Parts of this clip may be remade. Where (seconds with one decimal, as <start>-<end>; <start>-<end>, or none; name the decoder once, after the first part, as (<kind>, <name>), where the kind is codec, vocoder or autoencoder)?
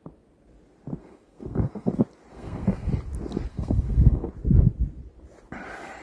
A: 1.0-1.9 (codec, SNAC); 2.3-2.9; 3.5-4.3